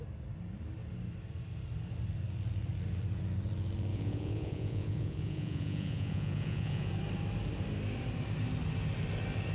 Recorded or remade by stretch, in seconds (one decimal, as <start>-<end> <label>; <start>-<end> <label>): 0.0-3.9 recorded; 3.9-6.9 remade; 6.9-9.5 recorded